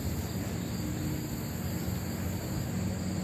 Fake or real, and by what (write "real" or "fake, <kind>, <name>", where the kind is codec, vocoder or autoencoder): real